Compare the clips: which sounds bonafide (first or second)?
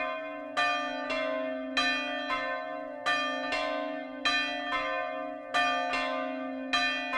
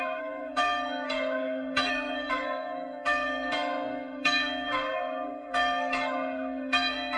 first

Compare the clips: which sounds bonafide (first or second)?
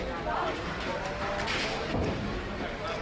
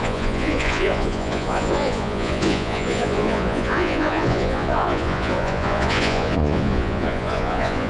first